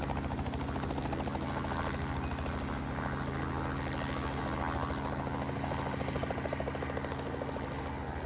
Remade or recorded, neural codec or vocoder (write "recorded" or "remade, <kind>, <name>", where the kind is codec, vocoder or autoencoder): recorded